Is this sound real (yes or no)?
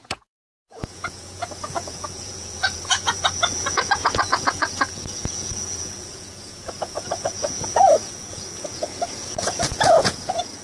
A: no